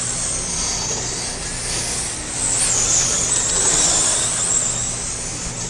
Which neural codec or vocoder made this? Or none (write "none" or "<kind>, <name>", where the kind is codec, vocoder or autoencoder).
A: none